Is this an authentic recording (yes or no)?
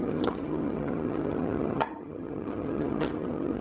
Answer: no